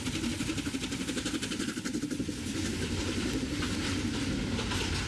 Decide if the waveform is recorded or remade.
recorded